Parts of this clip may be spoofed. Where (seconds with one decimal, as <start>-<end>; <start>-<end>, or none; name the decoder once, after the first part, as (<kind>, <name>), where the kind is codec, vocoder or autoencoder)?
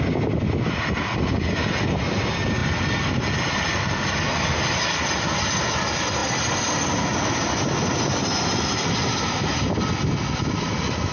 none